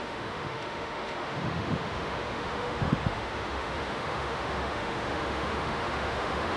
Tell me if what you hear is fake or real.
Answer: fake